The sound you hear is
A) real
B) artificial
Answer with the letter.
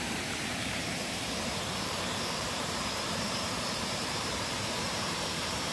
B